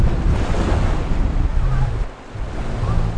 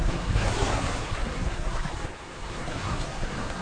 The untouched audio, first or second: first